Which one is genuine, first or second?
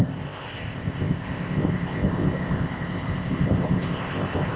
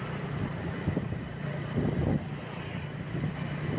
second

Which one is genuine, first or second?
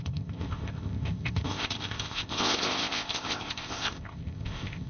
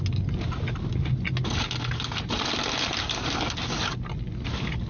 second